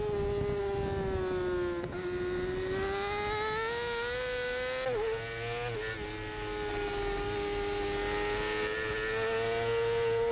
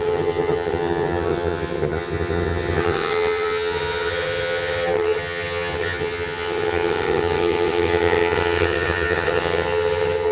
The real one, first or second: first